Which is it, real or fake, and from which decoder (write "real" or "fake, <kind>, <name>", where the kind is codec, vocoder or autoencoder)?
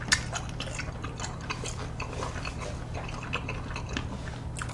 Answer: real